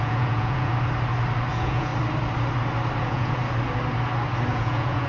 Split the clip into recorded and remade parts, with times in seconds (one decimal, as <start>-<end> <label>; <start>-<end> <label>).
0.0-0.7 remade; 0.7-1.5 recorded; 1.5-1.9 remade; 1.9-3.0 recorded; 3.0-3.4 remade; 3.4-4.5 recorded; 4.5-5.1 remade

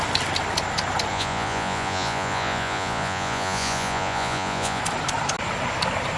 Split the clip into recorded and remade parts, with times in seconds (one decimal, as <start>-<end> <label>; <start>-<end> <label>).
0.0-1.1 recorded; 1.1-4.8 remade; 4.8-6.2 recorded

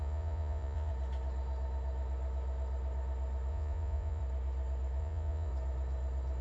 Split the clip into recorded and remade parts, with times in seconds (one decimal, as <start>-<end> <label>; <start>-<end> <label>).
0.0-0.9 remade; 0.9-3.5 recorded; 3.5-4.2 remade; 4.2-5.0 recorded; 5.0-5.5 remade; 5.5-6.4 recorded

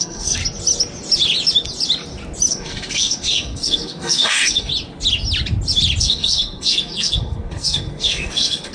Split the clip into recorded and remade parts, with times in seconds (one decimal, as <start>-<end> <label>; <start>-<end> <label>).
0.0-0.4 remade; 0.4-2.5 recorded; 2.5-4.7 remade; 4.7-6.0 recorded; 6.0-8.7 remade

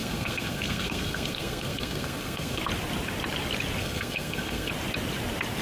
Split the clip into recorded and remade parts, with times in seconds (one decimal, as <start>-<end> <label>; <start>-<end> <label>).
0.0-2.6 remade; 2.6-3.8 recorded; 3.8-4.7 remade; 4.7-5.6 recorded

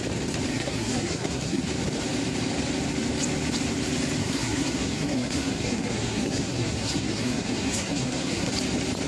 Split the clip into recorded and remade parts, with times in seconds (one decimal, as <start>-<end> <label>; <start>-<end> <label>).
0.0-0.5 recorded; 0.5-1.6 remade; 1.6-4.2 recorded; 4.2-8.5 remade; 8.5-9.1 recorded

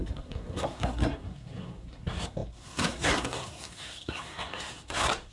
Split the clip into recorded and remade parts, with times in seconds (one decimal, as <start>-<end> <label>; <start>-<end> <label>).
0.0-5.3 remade